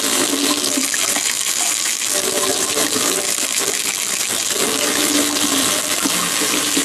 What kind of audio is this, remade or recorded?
remade